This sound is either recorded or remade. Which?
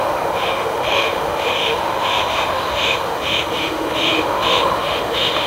remade